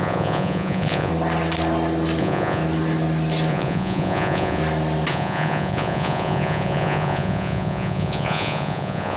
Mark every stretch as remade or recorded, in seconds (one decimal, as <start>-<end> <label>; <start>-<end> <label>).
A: 0.0-1.1 remade; 1.1-2.2 recorded; 2.2-2.6 remade; 2.6-3.5 recorded; 3.5-4.6 remade; 4.6-5.1 recorded; 5.1-9.2 remade